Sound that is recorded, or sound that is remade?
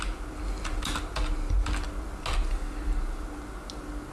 recorded